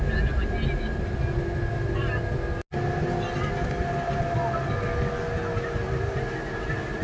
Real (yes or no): yes